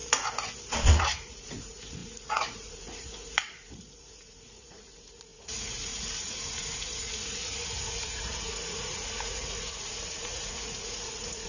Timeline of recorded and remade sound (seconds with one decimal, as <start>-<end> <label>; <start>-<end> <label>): 0.0-0.9 recorded; 0.9-11.5 remade